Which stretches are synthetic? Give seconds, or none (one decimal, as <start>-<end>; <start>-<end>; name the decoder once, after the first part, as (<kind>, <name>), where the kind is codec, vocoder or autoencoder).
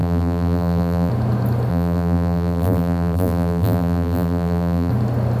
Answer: 0.0-1.1 (vocoder, BigVGAN v2); 1.7-4.9